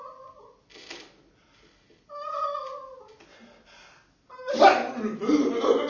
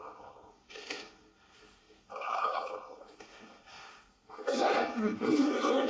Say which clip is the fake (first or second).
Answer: second